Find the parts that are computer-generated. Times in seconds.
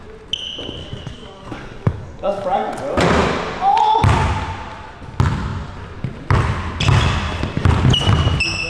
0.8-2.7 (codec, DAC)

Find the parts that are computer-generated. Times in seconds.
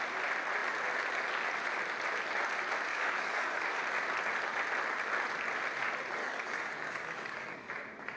2.9-3.8 (codec, DAC); 6.2-7.7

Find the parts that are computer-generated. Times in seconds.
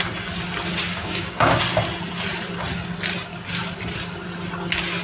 0.9-1.6 (codec, DAC)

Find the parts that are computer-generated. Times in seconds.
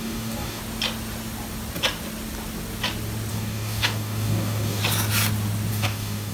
0.0-0.6 (codec, DAC); 3.3-4.8; 5.7-6.3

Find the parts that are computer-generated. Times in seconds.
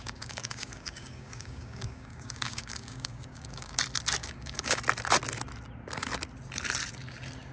0.0-3.8 (codec, DAC); 4.2-4.8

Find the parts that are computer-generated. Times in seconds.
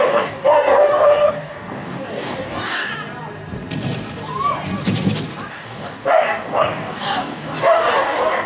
0.0-2.9 (codec, DAC); 5.5-8.5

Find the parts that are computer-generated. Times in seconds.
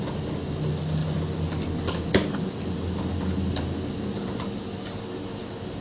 none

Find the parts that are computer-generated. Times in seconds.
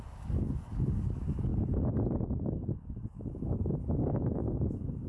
0.0-1.5 (codec, DAC); 2.3-5.1